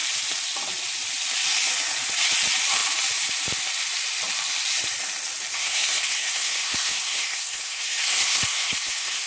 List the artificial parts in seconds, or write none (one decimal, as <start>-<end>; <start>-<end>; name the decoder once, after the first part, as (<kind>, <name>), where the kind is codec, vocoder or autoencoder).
5.5-9.3 (codec, SNAC)